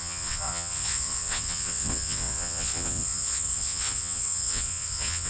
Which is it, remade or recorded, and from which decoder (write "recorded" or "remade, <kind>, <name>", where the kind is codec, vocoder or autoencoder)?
remade, vocoder, WaveNeXt